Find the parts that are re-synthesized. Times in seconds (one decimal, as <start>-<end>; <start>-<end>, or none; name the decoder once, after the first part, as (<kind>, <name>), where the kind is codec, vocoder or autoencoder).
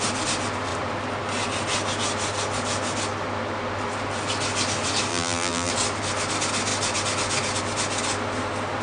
5.1-5.7 (vocoder, BigVGAN v2)